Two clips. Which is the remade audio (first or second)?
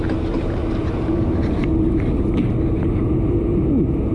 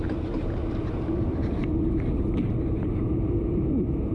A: second